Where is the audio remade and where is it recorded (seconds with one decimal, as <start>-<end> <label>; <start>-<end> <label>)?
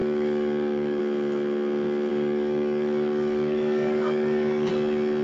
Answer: 0.0-1.0 remade; 1.0-2.1 recorded; 2.1-4.7 remade; 4.7-5.2 recorded